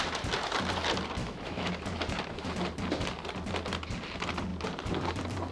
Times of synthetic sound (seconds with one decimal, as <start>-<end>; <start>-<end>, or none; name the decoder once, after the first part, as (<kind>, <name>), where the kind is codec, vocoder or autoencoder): 1.2-1.7 (autoencoder, DAC-VAE)